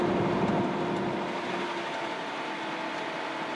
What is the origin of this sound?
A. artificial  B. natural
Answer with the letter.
B